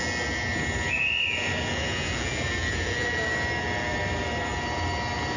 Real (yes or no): yes